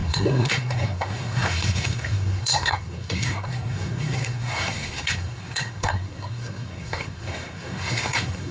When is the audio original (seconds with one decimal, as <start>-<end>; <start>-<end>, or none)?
none